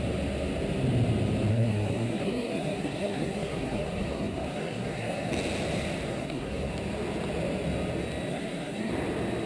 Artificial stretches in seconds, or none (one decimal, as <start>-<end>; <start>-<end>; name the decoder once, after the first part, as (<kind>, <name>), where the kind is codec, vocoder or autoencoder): 1.5-5.3 (codec, SNAC); 6.1-6.7; 8.3-8.9